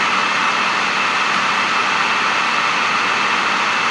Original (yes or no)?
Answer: yes